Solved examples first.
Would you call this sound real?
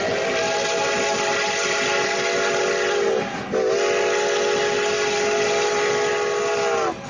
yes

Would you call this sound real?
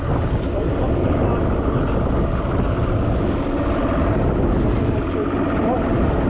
yes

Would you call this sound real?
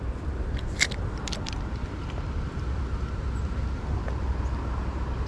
yes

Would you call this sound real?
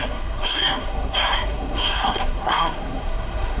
no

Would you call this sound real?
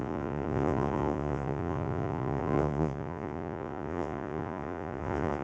no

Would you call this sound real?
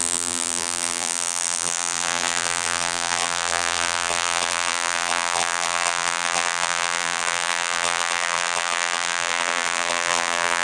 no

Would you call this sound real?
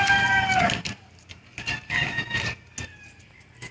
yes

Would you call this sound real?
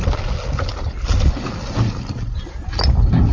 yes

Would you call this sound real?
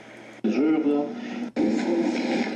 yes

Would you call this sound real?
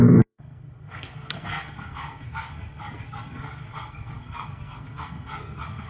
no